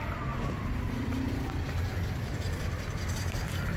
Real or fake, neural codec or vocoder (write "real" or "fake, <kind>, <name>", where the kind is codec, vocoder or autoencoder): fake, vocoder, BigVGAN v2